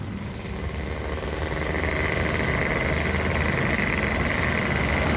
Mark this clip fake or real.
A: real